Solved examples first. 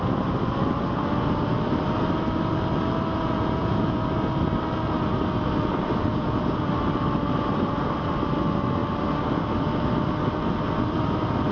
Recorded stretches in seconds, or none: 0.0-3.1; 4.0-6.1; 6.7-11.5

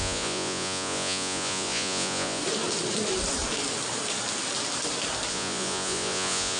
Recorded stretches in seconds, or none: 2.4-5.3